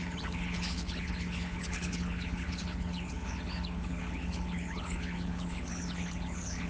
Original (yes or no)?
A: no